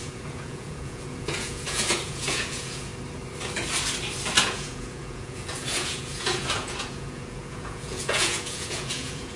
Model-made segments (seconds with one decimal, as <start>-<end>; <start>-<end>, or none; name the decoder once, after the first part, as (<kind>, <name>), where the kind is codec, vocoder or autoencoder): 0.0-2.9 (vocoder, Vocos); 4.4-9.4